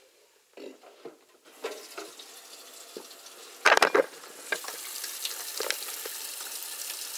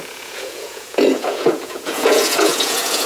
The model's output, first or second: second